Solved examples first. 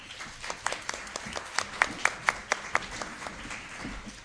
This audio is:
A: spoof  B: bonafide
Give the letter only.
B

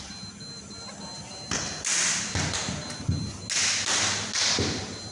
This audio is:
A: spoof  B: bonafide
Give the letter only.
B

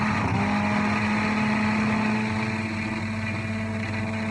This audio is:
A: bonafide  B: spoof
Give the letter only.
A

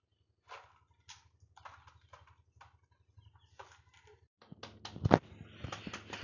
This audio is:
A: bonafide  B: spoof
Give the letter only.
A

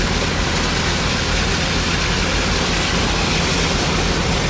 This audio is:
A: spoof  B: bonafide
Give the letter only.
B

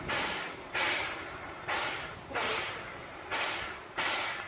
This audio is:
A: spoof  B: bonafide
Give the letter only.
A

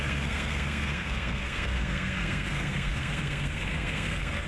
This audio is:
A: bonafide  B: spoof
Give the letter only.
B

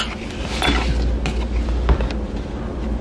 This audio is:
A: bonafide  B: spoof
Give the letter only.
A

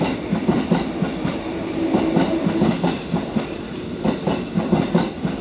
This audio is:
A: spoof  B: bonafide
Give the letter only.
B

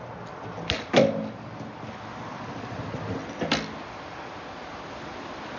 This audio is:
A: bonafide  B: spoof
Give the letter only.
A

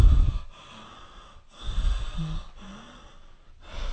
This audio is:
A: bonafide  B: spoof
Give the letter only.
A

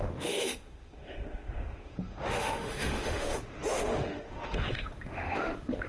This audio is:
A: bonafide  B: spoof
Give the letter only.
B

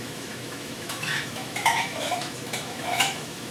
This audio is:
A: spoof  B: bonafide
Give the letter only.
A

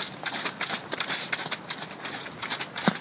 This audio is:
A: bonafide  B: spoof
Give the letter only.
A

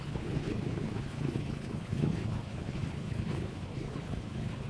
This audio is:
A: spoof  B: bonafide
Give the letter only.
A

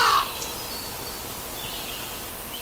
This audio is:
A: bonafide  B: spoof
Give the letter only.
A